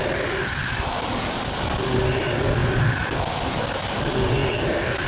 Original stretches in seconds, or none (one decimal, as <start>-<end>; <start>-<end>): 0.0-5.1

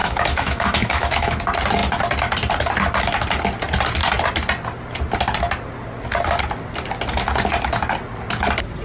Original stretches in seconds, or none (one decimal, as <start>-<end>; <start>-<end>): 1.4-8.8

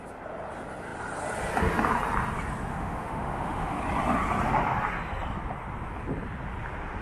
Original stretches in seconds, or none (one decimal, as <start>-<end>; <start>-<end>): 0.0-2.7; 3.8-7.0